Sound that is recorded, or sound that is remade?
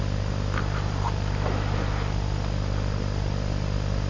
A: recorded